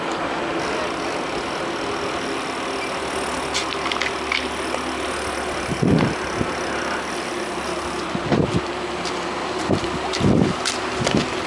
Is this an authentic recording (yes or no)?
yes